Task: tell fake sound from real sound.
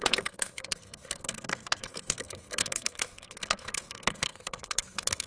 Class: fake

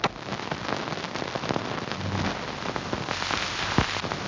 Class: real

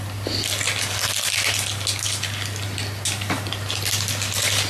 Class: real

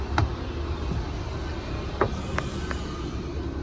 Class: real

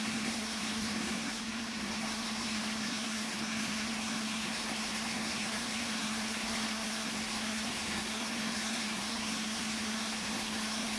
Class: fake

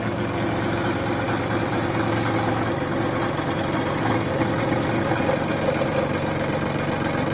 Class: real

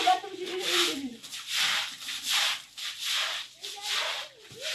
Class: real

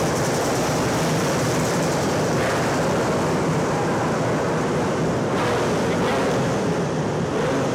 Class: real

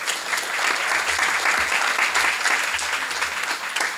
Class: real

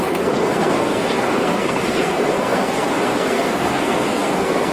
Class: fake